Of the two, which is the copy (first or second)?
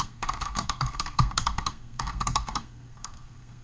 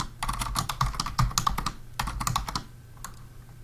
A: first